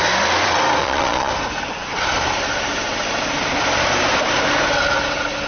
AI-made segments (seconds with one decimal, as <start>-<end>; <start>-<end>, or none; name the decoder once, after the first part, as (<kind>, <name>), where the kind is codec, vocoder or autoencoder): 0.8-1.3 (vocoder, Vocos)